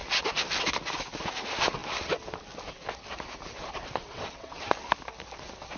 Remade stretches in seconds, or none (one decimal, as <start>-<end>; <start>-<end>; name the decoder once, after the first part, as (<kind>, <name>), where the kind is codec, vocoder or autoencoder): 4.0-4.6 (vocoder, WaveNeXt)